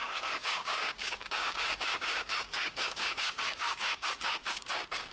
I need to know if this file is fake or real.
fake